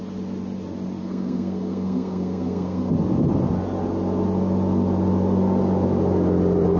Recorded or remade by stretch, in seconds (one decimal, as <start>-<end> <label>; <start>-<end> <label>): 0.0-1.0 recorded; 1.0-2.9 remade; 2.9-6.8 recorded